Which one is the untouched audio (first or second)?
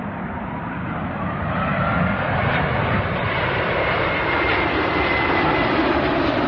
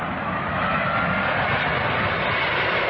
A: second